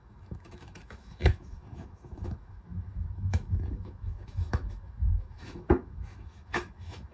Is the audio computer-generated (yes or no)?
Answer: yes